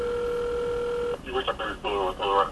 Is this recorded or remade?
recorded